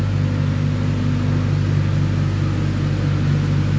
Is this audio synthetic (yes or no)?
no